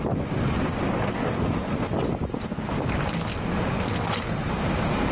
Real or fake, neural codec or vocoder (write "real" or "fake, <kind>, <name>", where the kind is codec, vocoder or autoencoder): real